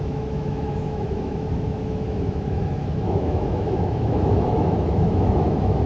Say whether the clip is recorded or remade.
remade